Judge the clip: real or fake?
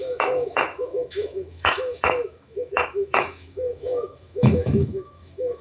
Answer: fake